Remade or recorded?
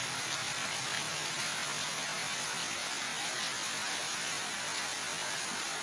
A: recorded